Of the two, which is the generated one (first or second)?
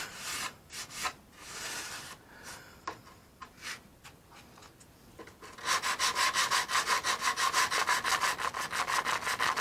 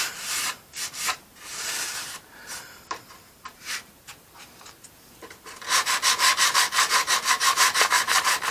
second